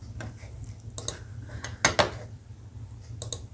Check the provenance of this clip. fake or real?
real